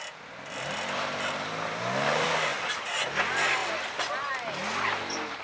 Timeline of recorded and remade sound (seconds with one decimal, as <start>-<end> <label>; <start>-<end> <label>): 0.0-2.5 recorded; 2.5-3.0 remade; 3.0-5.4 recorded